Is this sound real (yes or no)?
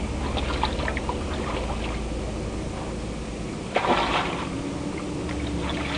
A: yes